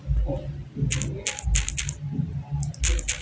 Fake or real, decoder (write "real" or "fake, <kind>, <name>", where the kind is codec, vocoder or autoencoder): real